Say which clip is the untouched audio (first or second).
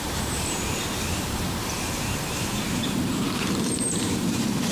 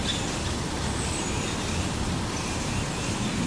second